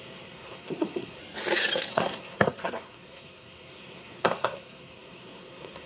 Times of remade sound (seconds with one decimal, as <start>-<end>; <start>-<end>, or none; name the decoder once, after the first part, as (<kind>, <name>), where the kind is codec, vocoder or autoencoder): 0.0-1.2 (codec, SNAC); 1.9-5.9